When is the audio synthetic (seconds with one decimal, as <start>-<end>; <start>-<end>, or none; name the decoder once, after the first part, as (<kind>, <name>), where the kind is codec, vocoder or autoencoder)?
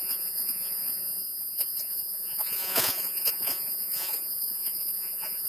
0.0-5.5 (vocoder, Vocos)